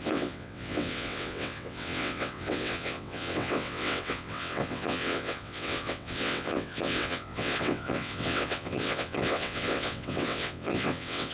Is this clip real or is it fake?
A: fake